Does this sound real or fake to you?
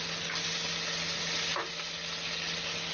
real